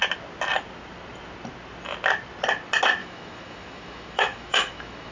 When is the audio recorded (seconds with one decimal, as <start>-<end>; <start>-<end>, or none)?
0.0-3.0